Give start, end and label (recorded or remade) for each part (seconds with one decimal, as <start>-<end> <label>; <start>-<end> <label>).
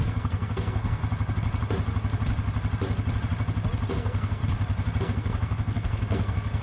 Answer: 0.0-1.0 remade; 1.0-3.9 recorded; 3.9-4.4 remade; 4.4-5.0 recorded; 5.0-6.6 remade